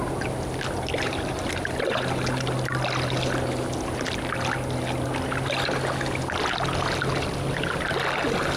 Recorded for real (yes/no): yes